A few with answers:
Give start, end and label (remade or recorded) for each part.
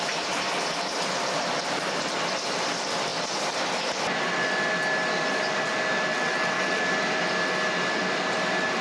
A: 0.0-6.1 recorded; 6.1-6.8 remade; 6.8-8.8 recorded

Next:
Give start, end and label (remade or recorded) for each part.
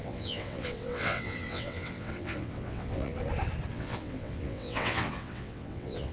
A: 0.0-3.1 remade; 3.1-3.7 recorded; 3.7-6.1 remade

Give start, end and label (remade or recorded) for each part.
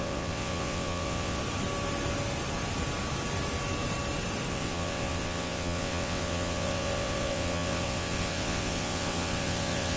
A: 0.0-1.4 remade; 1.4-4.5 recorded; 4.5-10.0 remade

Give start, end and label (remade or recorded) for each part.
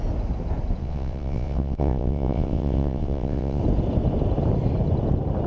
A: 0.0-0.8 recorded; 0.8-3.6 remade; 3.6-5.5 recorded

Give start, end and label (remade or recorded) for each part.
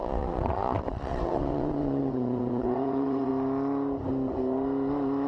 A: 0.0-3.3 remade; 3.3-5.3 recorded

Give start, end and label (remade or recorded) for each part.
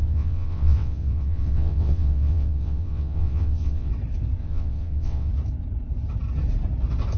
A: 0.0-3.9 remade; 3.9-4.4 recorded; 4.4-5.3 remade; 5.3-7.2 recorded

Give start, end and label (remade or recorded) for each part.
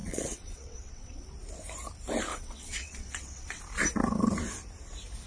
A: 0.0-1.3 remade; 1.3-2.3 recorded; 2.3-3.6 remade; 3.6-5.3 recorded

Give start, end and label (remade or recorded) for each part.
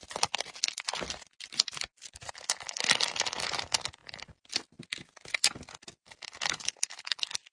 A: 0.0-7.5 recorded